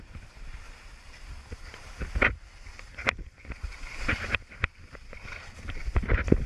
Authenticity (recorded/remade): remade